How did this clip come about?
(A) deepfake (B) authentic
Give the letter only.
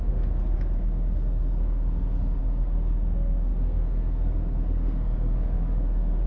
A